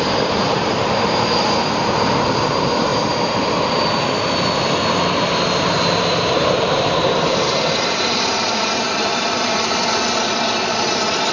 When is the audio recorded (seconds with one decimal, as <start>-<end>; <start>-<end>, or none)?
2.9-5.6; 9.1-11.3